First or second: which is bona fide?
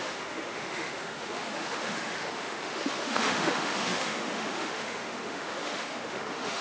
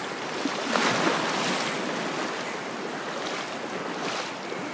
second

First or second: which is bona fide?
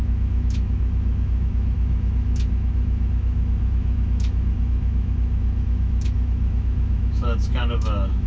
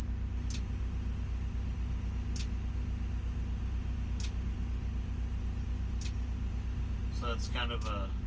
second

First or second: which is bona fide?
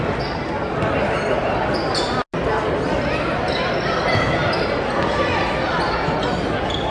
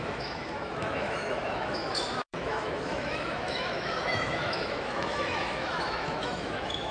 first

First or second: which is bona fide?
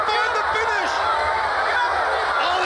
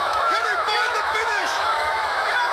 first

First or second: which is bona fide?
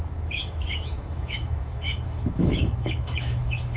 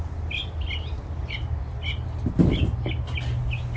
second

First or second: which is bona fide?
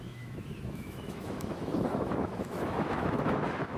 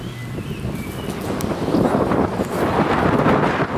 second